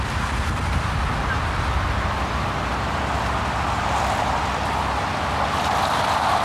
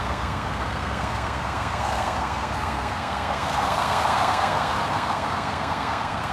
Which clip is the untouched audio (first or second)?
first